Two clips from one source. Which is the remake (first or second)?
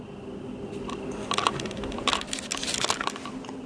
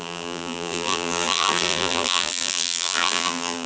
second